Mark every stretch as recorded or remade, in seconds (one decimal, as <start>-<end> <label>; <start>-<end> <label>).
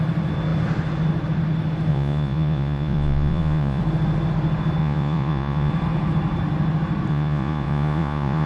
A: 0.0-1.9 recorded; 1.9-3.8 remade; 3.8-4.8 recorded; 4.8-5.7 remade; 5.7-7.1 recorded; 7.1-8.5 remade